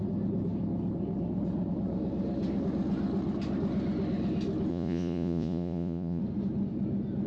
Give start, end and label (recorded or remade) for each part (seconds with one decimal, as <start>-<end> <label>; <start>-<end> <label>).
0.0-4.7 recorded; 4.7-6.2 remade; 6.2-7.3 recorded